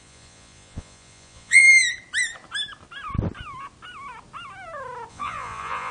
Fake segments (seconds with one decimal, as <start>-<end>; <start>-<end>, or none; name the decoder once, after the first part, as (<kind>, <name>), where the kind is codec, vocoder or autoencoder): 0.0-1.6 (vocoder, Vocos); 5.1-5.9